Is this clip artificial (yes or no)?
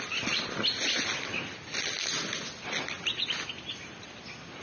no